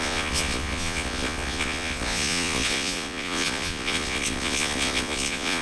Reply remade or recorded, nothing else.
remade